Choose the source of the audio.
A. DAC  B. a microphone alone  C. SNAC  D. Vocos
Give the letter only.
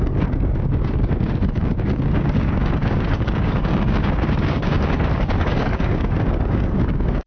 A